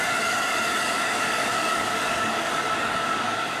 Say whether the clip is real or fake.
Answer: fake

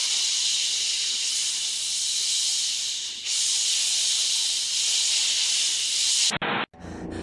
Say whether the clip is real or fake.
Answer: real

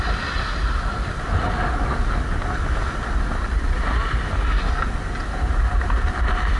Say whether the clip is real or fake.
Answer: real